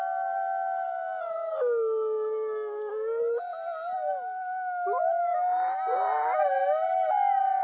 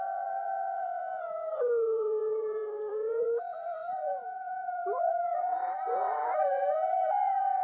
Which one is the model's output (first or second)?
second